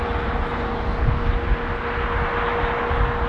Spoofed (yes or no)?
no